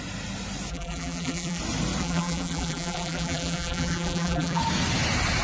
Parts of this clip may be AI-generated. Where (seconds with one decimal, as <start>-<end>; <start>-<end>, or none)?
0.7-1.6; 2.0-4.6